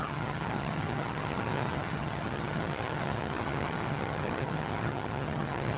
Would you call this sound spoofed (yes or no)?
yes